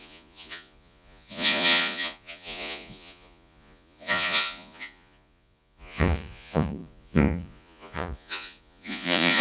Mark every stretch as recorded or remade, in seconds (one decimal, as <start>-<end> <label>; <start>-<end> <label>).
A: 0.0-9.4 remade